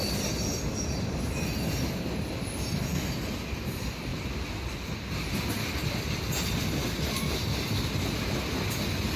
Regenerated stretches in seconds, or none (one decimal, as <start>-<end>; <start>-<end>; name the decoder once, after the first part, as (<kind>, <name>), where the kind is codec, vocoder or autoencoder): none